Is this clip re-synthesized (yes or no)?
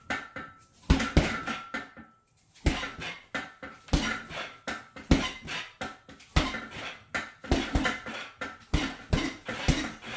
no